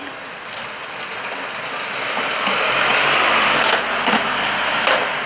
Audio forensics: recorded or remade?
recorded